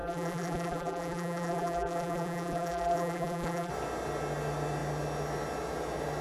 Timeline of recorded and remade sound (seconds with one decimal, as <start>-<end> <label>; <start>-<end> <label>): 0.0-3.7 remade; 3.7-6.2 recorded